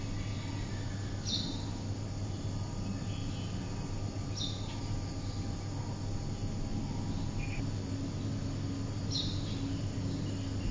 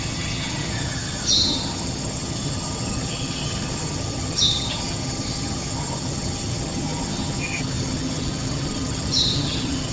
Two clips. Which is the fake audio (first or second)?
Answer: second